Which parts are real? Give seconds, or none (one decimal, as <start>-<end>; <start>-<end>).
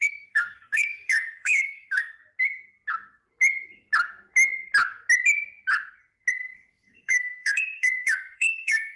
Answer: 2.2-6.3